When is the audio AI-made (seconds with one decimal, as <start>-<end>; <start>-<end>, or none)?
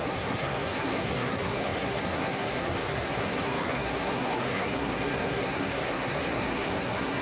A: 0.0-7.2